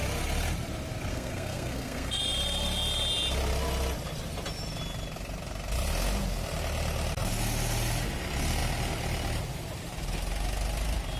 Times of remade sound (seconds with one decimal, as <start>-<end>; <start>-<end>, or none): 1.1-2.2